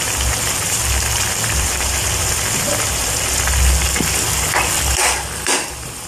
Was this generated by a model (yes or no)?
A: yes